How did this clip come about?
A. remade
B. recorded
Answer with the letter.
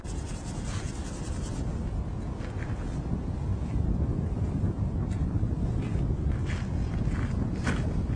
B